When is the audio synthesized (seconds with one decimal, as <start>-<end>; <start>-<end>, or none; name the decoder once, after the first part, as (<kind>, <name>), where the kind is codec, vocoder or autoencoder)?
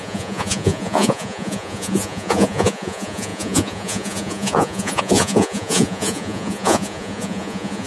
0.0-7.9 (vocoder, Vocos)